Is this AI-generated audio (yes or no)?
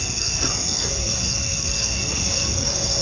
yes